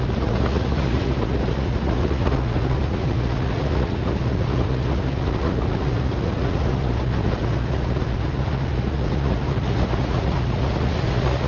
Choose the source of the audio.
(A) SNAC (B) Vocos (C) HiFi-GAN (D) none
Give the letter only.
B